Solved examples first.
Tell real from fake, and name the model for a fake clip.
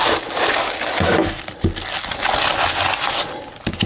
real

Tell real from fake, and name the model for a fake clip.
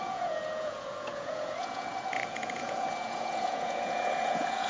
fake, vocoder, Vocos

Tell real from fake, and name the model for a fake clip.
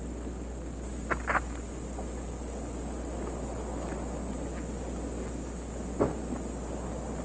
real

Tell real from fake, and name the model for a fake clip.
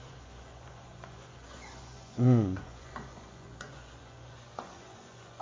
fake, vocoder, Vocos